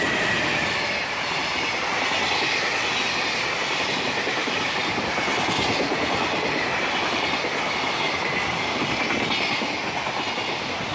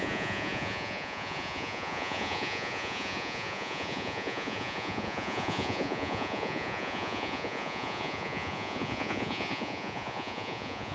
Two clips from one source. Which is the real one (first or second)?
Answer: first